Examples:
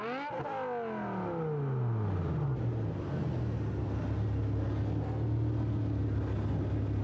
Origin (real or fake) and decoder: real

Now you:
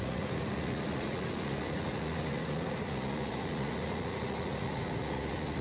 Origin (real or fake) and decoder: fake, vocoder, Vocos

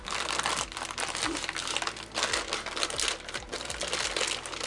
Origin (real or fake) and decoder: real